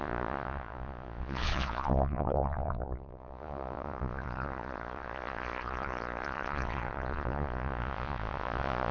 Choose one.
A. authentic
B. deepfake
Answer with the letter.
B